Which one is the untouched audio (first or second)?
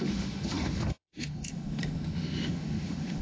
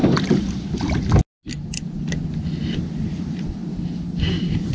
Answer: second